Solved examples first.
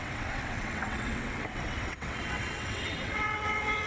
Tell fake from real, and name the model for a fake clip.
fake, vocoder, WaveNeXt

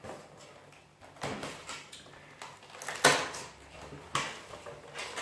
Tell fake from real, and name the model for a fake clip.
real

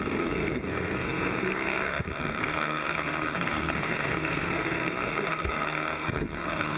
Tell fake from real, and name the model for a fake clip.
fake, codec, SNAC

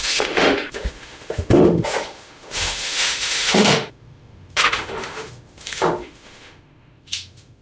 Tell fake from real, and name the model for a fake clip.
fake, autoencoder, DAC-VAE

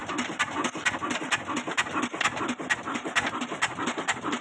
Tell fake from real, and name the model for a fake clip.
real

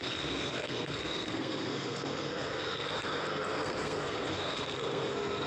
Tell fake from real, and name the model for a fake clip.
fake, codec, SNAC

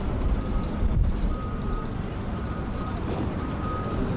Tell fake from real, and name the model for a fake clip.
fake, vocoder, BigVGAN v2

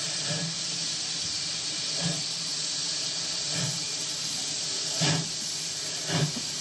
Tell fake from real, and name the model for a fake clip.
real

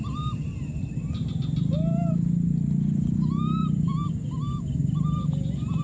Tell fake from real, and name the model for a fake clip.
real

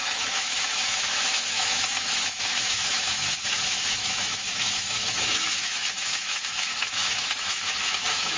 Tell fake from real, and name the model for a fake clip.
fake, autoencoder, DAC-VAE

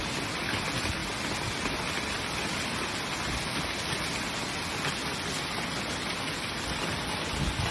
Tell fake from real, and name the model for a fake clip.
real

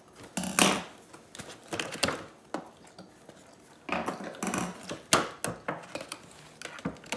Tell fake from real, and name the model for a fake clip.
real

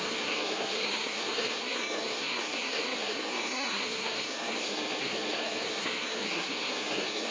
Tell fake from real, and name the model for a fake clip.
fake, codec, SNAC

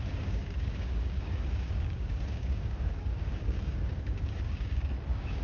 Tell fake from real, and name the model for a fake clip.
fake, codec, DAC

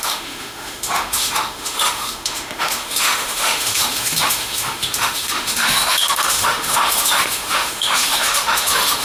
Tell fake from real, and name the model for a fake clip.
fake, autoencoder, DAC-VAE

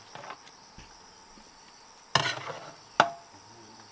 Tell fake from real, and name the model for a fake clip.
real